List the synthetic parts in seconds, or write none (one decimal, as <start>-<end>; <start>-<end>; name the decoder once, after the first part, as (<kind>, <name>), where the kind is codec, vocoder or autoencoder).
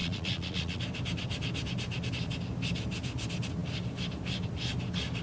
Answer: 0.0-0.8 (vocoder, Vocos)